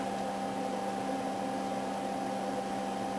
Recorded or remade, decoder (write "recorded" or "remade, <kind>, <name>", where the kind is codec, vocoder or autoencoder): recorded